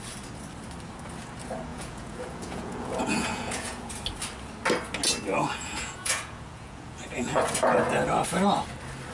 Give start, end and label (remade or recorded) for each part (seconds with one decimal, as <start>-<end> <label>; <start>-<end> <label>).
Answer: 0.0-1.7 recorded; 1.7-3.9 remade; 3.9-5.3 recorded; 5.3-7.5 remade; 7.5-9.1 recorded